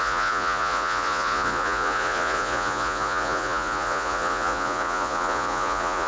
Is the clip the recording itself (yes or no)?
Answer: no